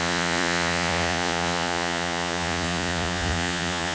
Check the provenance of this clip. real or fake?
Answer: fake